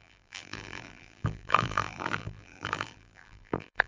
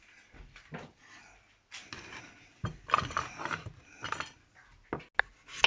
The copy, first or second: first